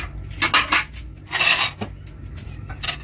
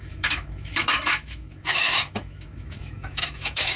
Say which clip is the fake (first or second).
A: second